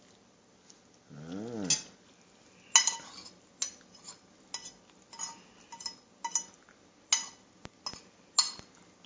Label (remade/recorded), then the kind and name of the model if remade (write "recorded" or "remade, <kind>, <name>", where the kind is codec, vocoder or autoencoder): recorded